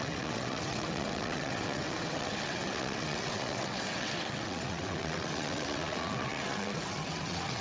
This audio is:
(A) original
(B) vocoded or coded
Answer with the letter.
B